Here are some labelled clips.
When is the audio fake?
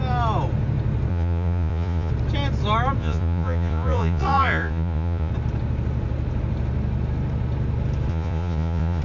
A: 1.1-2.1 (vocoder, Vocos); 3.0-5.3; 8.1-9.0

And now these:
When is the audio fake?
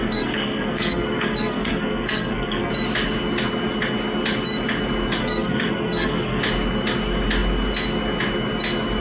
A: 0.0-2.7 (codec, SNAC); 5.2-6.4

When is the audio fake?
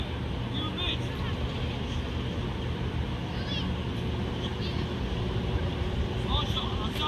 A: none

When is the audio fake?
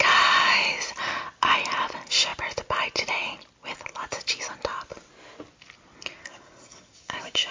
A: 6.2-7.5 (codec, DAC)